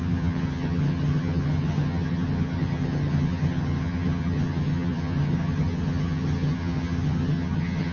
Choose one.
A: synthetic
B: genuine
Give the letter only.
A